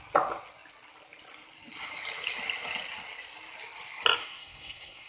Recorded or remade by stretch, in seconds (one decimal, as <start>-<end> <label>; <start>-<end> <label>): 0.0-4.2 recorded; 4.2-5.1 remade